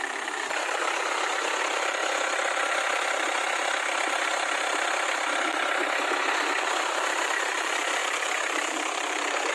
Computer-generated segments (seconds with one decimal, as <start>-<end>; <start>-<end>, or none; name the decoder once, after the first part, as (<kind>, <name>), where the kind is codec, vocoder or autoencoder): 0.0-0.8 (vocoder, BigVGAN v2); 1.6-2.0; 6.8-9.5